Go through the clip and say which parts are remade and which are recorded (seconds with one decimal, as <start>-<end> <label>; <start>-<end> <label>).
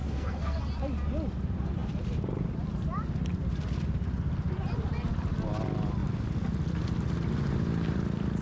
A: 0.0-0.6 remade; 0.6-8.4 recorded